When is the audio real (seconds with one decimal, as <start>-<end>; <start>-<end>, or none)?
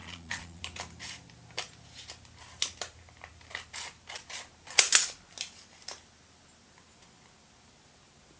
0.6-8.4